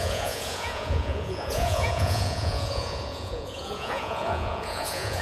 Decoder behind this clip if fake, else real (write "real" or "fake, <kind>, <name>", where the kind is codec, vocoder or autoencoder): fake, vocoder, Vocos